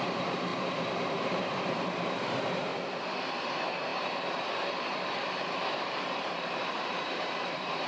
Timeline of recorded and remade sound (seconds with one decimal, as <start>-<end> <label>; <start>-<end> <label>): 0.0-2.7 remade; 2.7-3.3 recorded; 3.3-7.9 remade